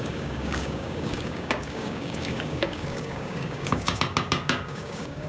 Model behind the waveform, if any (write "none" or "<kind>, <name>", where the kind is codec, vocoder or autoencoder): codec, DAC